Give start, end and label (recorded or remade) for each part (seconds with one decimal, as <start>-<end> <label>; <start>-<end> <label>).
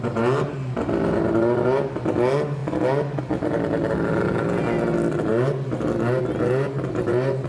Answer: 0.0-7.5 recorded